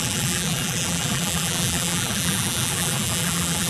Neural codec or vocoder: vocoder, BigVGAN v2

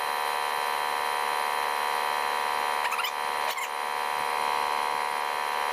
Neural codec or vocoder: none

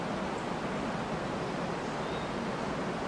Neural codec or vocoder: none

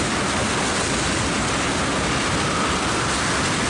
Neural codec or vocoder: none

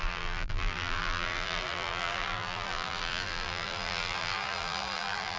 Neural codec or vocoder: vocoder, BigVGAN v2